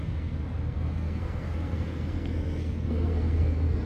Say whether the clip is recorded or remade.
remade